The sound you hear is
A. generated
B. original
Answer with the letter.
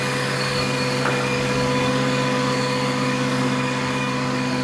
A